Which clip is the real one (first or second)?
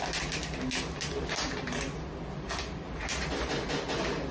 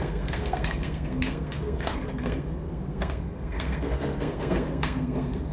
first